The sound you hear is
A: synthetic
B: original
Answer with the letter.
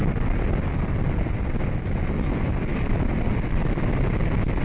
B